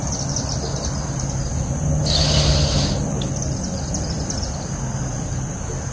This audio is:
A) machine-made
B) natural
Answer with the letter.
B